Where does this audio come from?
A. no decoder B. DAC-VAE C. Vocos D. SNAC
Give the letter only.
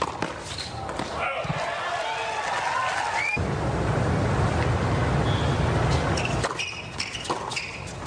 A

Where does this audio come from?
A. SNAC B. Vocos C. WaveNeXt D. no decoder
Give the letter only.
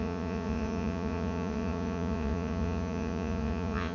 B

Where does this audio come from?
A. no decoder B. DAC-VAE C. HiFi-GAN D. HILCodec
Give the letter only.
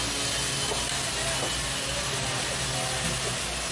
A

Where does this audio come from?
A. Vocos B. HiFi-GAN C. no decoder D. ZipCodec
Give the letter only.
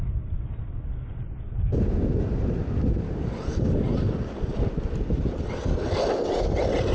C